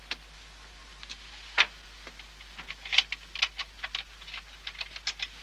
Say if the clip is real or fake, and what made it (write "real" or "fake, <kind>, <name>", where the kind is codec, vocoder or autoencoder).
real